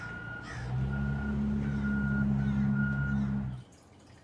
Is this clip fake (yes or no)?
no